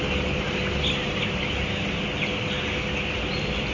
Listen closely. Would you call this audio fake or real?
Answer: real